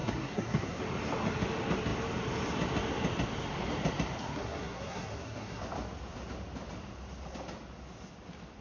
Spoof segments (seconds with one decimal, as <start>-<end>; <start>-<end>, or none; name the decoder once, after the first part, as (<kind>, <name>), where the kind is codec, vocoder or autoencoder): 0.0-0.8 (codec, SNAC); 4.2-5.6

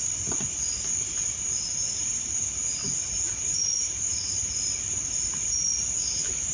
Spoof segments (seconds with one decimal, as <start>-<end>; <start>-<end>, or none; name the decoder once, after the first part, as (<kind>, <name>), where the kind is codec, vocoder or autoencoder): none

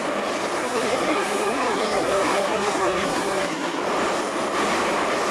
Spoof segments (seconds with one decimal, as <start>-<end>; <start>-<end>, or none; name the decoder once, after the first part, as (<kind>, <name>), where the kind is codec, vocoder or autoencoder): 0.6-3.8 (codec, SNAC)

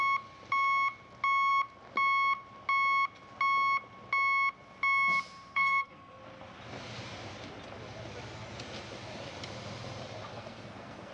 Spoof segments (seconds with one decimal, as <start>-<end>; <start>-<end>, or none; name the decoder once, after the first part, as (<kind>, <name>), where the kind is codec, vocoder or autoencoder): 5.5-6.2 (codec, SNAC); 10.3-11.1